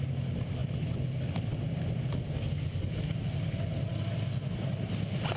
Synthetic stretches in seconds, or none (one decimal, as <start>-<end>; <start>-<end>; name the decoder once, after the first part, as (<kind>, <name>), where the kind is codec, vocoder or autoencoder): none